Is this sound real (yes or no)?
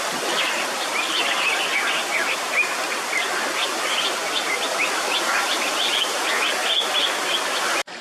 yes